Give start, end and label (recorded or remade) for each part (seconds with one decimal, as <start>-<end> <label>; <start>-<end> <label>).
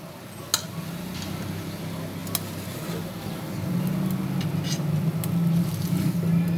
0.0-6.6 recorded